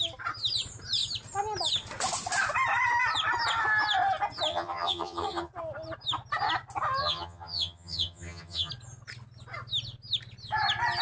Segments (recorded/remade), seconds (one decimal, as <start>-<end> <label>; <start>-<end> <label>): 0.0-4.5 recorded; 4.5-5.5 remade; 5.5-7.0 recorded; 7.0-8.7 remade; 8.7-11.0 recorded